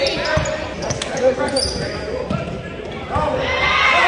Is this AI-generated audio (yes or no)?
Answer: no